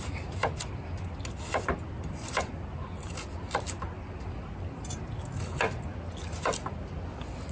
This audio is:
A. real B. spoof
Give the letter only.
A